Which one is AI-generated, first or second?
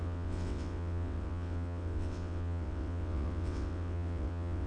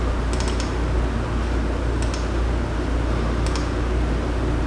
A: first